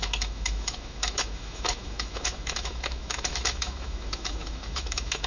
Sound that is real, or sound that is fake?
fake